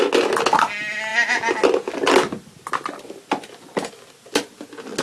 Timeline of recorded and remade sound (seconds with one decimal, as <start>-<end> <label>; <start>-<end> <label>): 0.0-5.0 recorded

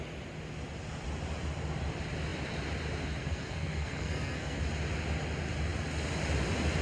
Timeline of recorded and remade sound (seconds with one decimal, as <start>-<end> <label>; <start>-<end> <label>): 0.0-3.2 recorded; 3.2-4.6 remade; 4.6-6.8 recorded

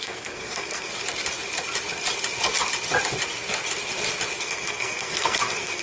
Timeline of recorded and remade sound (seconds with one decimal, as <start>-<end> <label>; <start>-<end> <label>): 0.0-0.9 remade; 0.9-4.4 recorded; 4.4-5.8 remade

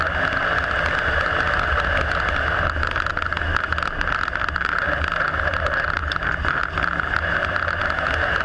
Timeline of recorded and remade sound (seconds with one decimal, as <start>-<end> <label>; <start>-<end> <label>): 0.0-8.4 recorded

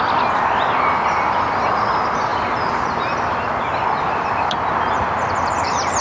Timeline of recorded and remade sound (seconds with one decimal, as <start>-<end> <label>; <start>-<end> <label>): 0.0-6.0 recorded

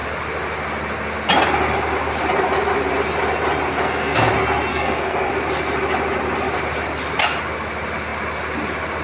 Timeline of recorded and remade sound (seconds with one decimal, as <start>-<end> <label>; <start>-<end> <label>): 0.0-3.7 recorded; 3.7-4.3 remade; 4.3-4.7 recorded; 4.7-5.3 remade; 5.3-9.0 recorded

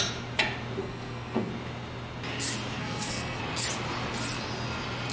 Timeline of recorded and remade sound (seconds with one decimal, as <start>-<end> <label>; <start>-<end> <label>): 0.0-0.8 recorded; 0.8-1.5 remade; 1.5-2.8 recorded; 2.8-3.4 remade; 3.4-5.1 recorded

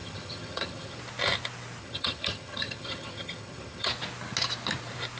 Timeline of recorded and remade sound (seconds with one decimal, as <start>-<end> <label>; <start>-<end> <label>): 0.0-1.0 remade; 1.0-1.8 recorded; 1.8-3.9 remade; 3.9-5.2 recorded